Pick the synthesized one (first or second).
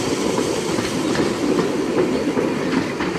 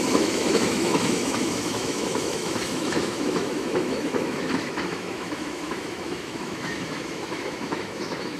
second